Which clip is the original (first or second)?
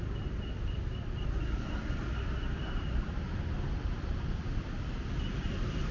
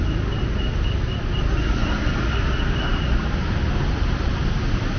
second